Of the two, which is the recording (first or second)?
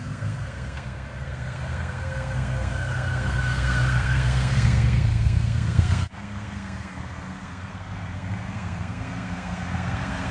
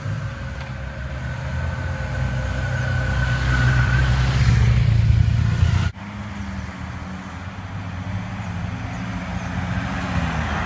second